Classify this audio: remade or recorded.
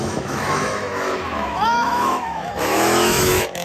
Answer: remade